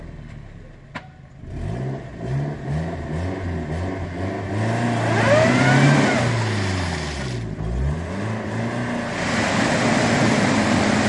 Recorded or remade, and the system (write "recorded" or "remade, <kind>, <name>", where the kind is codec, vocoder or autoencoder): recorded